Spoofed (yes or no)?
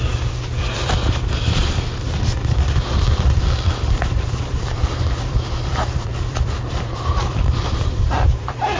yes